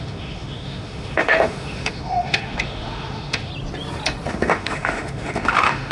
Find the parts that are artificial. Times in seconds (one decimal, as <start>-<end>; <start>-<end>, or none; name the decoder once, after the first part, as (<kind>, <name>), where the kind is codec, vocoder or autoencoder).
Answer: 0.0-3.5 (autoencoder, DAC-VAE); 4.3-5.9